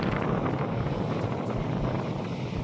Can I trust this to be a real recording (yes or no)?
yes